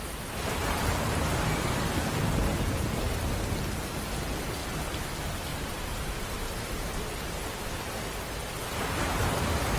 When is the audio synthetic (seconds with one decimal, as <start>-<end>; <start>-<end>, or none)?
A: 2.5-3.3; 4.6-5.1; 5.5-7.9